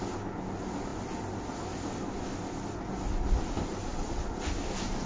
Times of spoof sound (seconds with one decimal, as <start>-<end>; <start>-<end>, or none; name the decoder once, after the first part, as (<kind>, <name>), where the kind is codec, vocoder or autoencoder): 3.8-4.4 (vocoder, Vocos)